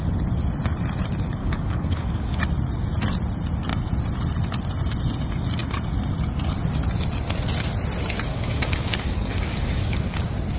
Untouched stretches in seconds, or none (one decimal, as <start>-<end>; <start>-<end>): 0.0-1.4; 2.4-8.3; 10.2-10.6